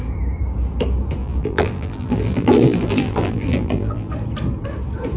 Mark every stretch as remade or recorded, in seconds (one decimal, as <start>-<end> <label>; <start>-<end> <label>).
0.0-1.2 recorded; 1.2-4.1 remade; 4.1-5.2 recorded